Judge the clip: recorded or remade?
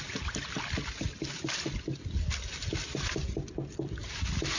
recorded